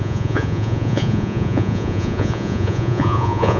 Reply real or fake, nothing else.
fake